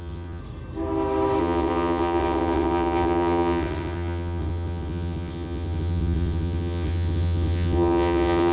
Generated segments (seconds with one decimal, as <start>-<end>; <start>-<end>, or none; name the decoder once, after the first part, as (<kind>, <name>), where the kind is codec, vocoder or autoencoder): 0.0-0.4 (vocoder, WaveNeXt); 1.4-8.5